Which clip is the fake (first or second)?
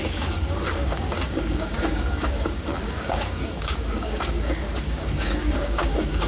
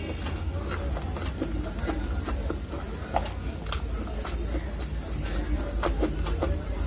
first